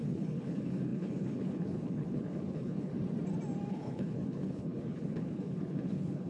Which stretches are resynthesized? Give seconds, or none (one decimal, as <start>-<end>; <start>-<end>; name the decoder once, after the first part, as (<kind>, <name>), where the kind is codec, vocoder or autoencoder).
0.0-2.9 (codec, HILCodec); 3.7-6.3